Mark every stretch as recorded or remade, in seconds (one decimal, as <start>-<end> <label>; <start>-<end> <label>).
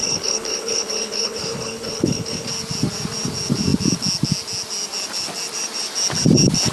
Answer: 0.0-2.5 remade; 2.5-6.7 recorded